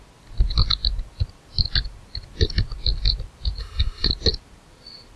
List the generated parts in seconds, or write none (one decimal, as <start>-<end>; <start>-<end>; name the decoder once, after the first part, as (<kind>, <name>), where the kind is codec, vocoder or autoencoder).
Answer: 3.6-4.1 (codec, SNAC)